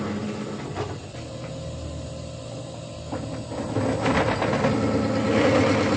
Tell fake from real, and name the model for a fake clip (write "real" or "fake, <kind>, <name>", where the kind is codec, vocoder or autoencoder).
real